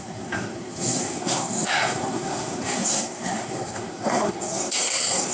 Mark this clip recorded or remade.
remade